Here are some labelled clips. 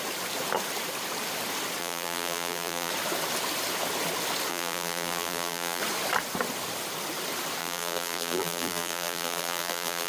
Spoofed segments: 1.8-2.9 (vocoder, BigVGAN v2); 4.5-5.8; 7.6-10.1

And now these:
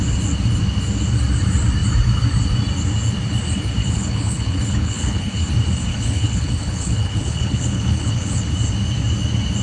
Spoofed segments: 3.8-5.5 (codec, HILCodec); 5.9-8.4

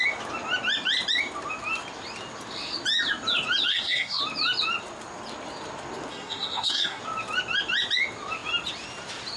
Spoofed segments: 3.7-4.2 (codec, SNAC); 6.1-7.0

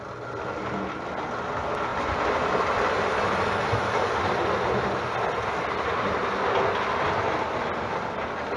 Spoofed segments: none

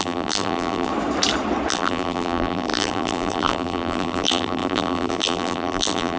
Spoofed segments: 0.0-0.9 (vocoder, BigVGAN v2); 1.7-6.2

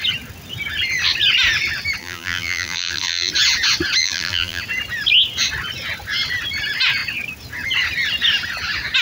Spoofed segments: 2.0-3.3 (vocoder, BigVGAN v2); 4.0-4.6